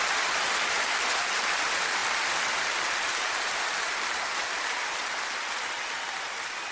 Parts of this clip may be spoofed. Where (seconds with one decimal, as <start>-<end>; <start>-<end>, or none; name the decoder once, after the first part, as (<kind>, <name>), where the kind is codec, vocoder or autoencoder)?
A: none